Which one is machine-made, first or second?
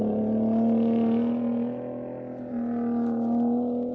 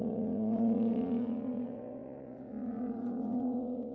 second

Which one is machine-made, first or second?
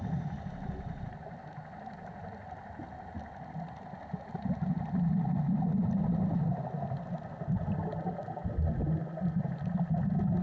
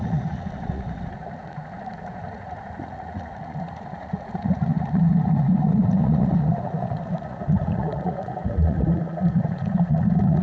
second